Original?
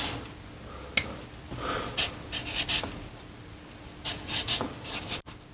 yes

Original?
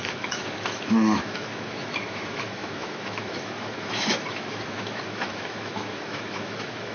no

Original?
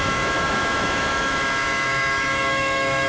no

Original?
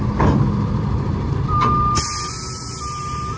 yes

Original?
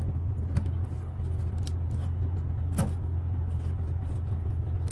yes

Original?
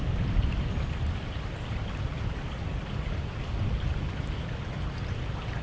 yes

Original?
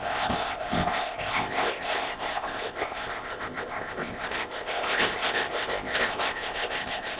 no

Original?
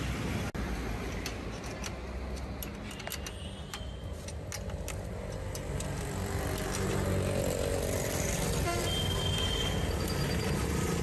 yes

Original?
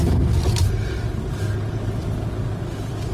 yes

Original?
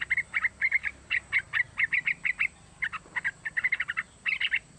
yes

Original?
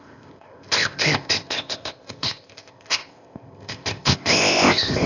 no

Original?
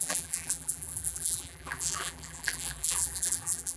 no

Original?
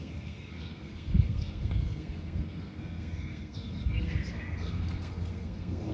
no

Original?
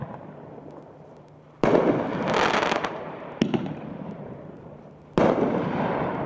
yes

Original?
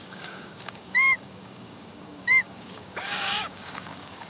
no